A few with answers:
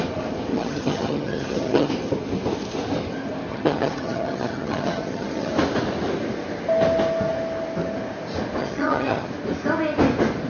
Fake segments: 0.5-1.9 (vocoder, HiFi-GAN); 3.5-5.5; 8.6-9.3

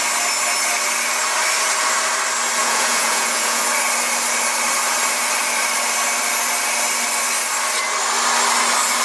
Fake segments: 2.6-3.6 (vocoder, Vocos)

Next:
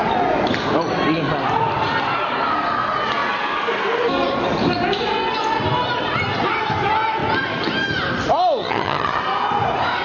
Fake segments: 8.6-9.2 (vocoder, HiFi-GAN)

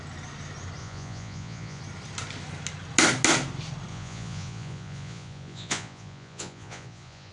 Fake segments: 0.8-1.8 (vocoder, Vocos); 3.9-7.3

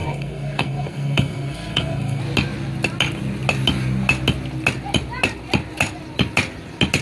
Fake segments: 0.0-2.2 (codec, SNAC)

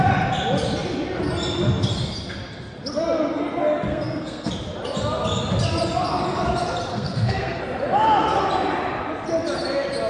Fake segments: 3.9-4.5 (codec, SNAC); 6.9-7.6

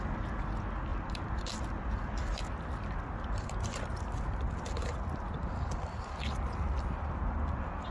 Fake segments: 0.9-1.4 (vocoder, BigVGAN v2)

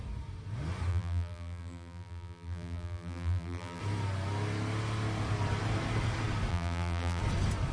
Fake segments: 0.9-3.8 (vocoder, BigVGAN v2); 6.5-7.2